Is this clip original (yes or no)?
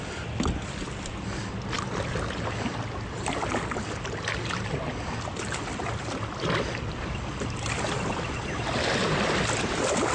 yes